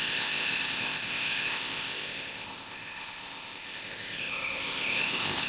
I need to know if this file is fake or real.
fake